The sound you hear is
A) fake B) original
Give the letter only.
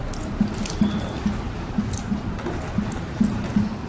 B